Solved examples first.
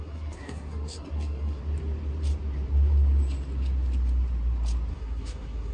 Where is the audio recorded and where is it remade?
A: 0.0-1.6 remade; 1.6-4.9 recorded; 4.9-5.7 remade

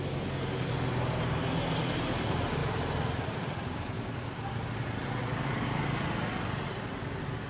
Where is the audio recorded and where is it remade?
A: 0.0-7.5 recorded

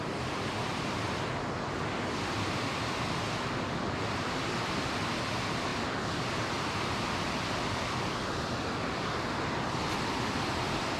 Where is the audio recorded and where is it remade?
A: 0.0-11.0 recorded

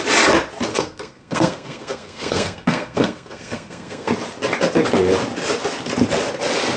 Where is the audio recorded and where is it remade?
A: 0.0-0.7 recorded; 0.7-4.1 remade; 4.1-6.8 recorded

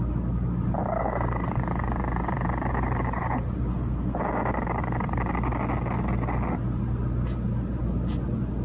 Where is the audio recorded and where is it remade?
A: 0.0-1.0 recorded; 1.0-1.5 remade; 1.5-3.7 recorded; 3.7-4.2 remade; 4.2-8.6 recorded

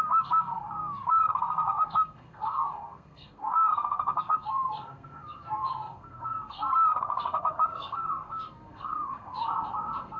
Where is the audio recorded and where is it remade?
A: 0.0-10.2 remade